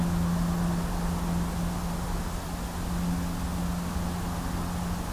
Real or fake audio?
real